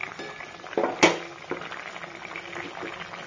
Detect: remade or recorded recorded